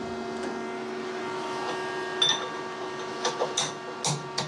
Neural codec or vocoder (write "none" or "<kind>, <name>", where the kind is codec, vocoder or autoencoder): none